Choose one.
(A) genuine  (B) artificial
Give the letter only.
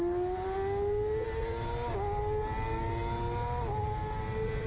A